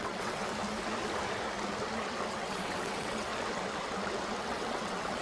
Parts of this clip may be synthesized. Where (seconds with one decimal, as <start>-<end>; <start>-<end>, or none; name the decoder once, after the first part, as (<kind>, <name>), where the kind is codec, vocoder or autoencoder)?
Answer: 0.0-0.5 (vocoder, WaveNeXt); 2.3-3.3; 4.4-5.2